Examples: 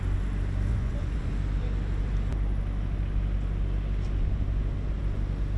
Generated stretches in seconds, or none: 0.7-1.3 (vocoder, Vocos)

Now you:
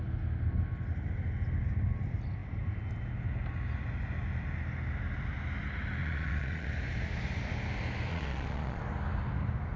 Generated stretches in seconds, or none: 6.0-6.7 (vocoder, Vocos); 8.1-8.8

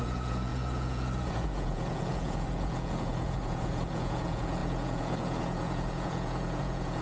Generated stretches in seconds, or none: 0.0-7.0 (vocoder, Vocos)

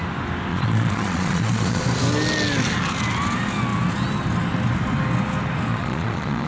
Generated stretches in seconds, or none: 0.5-1.8 (vocoder, Vocos); 5.7-6.5

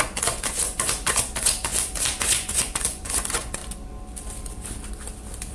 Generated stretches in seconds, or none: 0.0-1.7 (vocoder, Vocos); 2.2-3.6

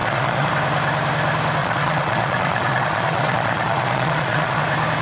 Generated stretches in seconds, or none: 0.0-0.5 (vocoder, Vocos); 1.6-4.6

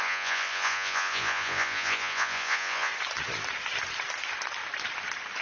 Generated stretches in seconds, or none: 0.0-2.9 (vocoder, Vocos)

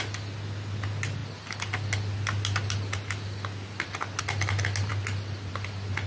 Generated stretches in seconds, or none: none